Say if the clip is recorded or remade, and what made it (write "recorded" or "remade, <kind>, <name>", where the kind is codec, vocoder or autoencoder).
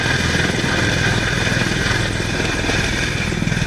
recorded